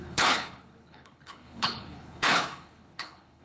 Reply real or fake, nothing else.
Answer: fake